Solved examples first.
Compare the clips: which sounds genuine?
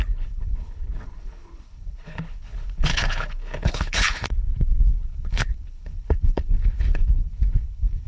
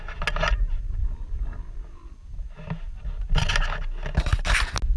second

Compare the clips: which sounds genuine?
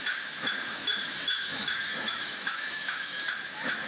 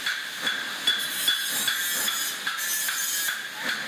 second